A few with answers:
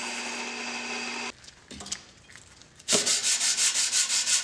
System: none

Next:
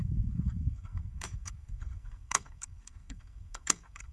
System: codec, SNAC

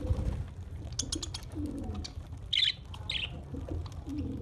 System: none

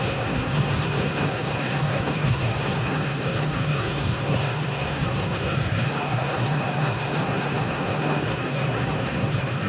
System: codec, SNAC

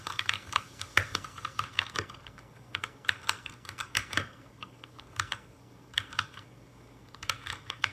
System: codec, SNAC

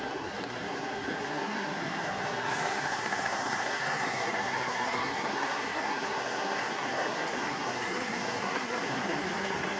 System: codec, SNAC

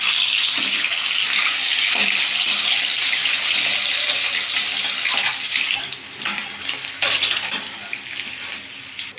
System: none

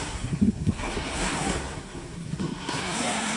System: codec, SNAC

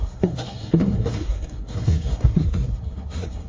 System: codec, SNAC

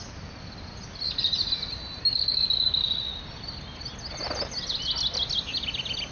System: none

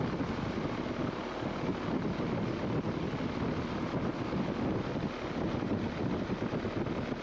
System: none